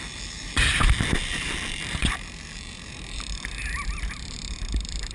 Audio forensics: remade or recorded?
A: remade